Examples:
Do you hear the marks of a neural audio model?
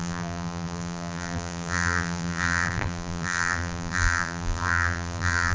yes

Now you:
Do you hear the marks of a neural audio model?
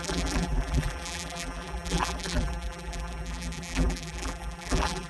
yes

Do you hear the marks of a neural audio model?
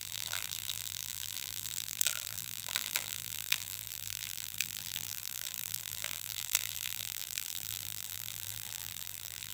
yes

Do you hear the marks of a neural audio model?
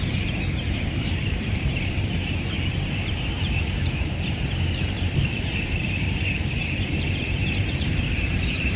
yes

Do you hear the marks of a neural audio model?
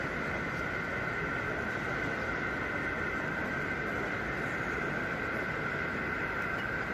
no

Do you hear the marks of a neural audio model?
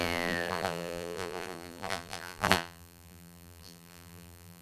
yes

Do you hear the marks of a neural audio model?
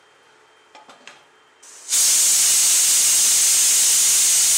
no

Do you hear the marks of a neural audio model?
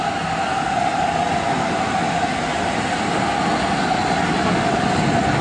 no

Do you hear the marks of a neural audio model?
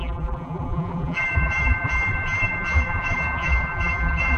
yes